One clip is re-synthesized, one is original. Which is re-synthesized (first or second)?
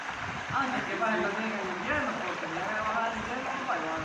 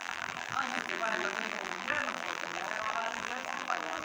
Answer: second